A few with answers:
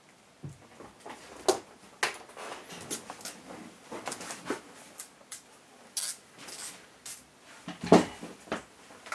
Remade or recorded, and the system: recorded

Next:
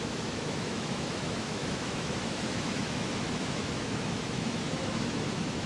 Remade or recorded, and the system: remade, autoencoder, DAC-VAE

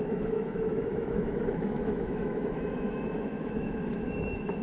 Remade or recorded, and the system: remade, autoencoder, DAC-VAE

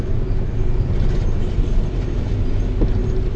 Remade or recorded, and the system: recorded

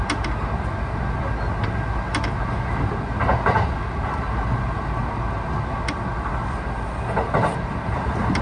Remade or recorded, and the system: recorded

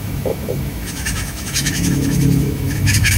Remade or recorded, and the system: remade, autoencoder, DAC-VAE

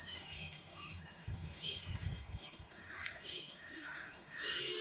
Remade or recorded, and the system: remade, autoencoder, DAC-VAE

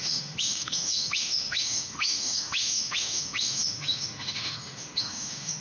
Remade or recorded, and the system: remade, autoencoder, DAC-VAE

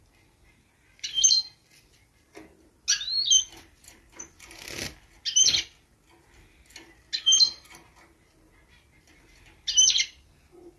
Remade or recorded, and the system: recorded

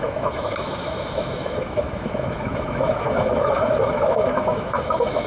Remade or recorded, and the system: remade, autoencoder, DAC-VAE